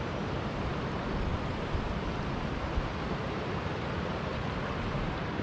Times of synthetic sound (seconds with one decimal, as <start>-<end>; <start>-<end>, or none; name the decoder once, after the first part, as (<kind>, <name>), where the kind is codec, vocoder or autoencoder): 0.0-1.3 (vocoder, BigVGAN v2); 3.0-4.3; 4.8-5.4